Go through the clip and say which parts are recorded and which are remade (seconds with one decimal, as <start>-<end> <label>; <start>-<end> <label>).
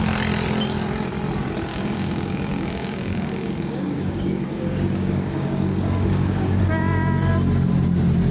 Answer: 0.0-1.7 recorded; 1.7-6.6 remade; 6.6-8.3 recorded